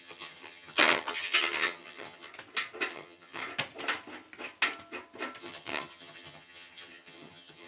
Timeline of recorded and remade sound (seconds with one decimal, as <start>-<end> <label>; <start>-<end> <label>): 0.0-2.3 remade; 2.3-2.9 recorded; 2.9-3.4 remade; 3.4-5.4 recorded; 5.4-7.7 remade